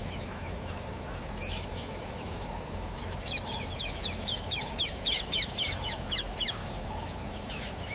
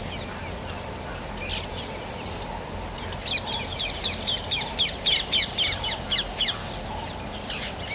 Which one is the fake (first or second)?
first